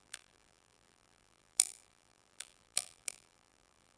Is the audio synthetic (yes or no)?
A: yes